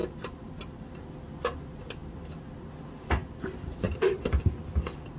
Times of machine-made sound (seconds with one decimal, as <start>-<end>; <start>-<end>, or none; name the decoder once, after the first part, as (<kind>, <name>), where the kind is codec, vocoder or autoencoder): none